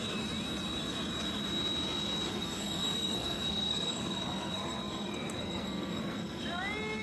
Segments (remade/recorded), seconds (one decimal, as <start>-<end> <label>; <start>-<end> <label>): 0.0-2.3 recorded; 2.3-6.4 remade; 6.4-7.0 recorded